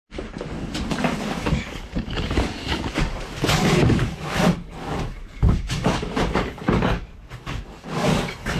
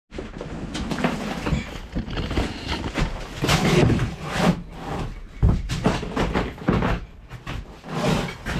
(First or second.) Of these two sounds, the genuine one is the second